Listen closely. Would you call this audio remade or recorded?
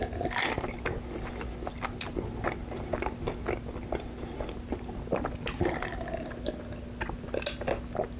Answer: recorded